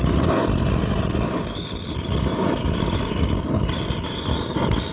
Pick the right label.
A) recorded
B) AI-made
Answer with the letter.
A